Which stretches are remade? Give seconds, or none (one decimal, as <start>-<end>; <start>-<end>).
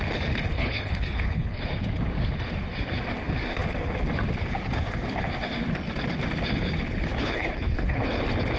0.5-1.6; 7.1-8.1